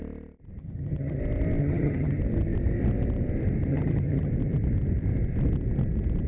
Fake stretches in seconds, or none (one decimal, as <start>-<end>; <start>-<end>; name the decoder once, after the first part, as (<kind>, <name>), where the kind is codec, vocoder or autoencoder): 0.6-1.2 (vocoder, HiFi-GAN); 1.6-2.2; 3.7-4.3